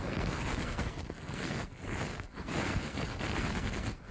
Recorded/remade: remade